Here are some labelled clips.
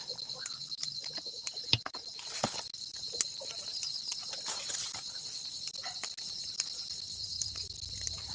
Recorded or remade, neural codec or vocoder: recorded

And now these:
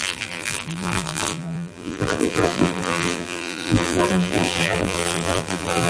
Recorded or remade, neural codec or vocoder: remade, vocoder, BigVGAN v2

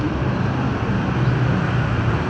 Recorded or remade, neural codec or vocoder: recorded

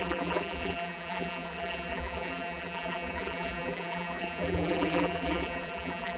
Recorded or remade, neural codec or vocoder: remade, vocoder, BigVGAN v2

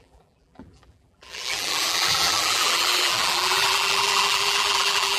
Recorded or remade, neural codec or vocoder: remade, vocoder, BigVGAN v2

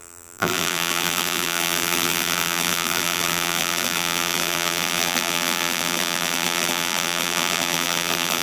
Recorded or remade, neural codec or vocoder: remade, vocoder, BigVGAN v2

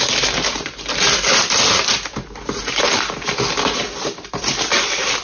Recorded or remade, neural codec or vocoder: recorded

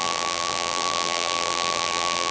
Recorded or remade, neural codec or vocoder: remade, vocoder, BigVGAN v2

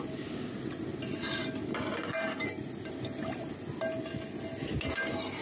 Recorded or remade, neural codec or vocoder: recorded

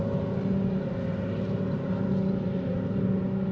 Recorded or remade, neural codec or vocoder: recorded